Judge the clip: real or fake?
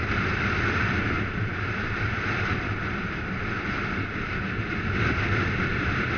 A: fake